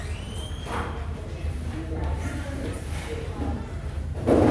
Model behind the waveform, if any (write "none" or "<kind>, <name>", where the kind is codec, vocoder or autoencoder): vocoder, BigVGAN v2